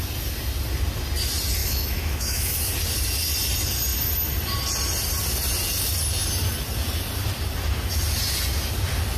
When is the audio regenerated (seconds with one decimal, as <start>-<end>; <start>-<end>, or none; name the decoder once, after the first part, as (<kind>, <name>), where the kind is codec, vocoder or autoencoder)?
1.6-2.7 (autoencoder, DAC-VAE)